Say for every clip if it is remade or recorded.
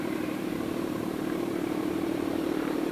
remade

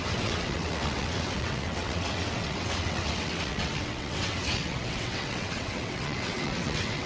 remade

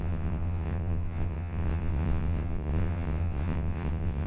remade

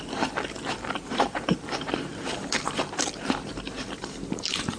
remade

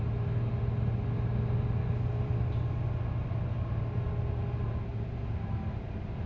recorded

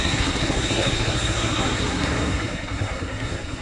remade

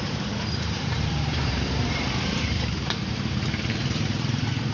remade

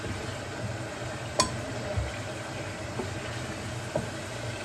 recorded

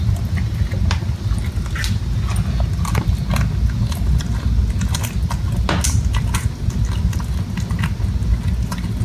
recorded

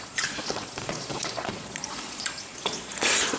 remade